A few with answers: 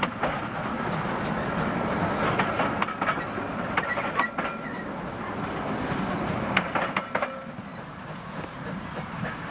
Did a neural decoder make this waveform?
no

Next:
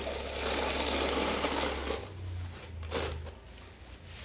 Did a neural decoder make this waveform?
no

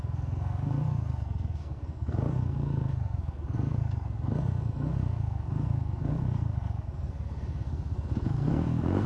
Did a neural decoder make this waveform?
yes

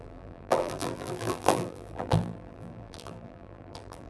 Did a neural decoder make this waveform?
yes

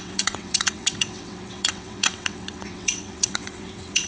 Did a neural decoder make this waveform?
yes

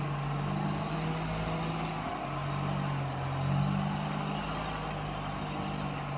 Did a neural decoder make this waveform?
no